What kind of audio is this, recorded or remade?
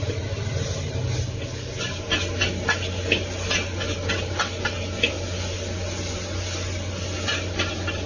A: recorded